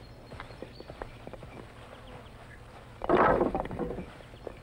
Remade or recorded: recorded